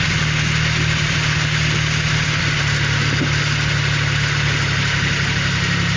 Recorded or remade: recorded